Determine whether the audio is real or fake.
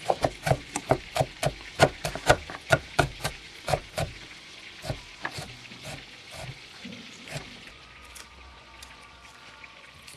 fake